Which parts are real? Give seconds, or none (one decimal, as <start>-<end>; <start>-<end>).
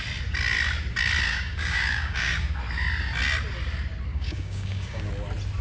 0.0-1.3; 2.6-4.1; 5.1-5.6